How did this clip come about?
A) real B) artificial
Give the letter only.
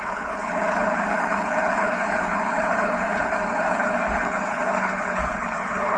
B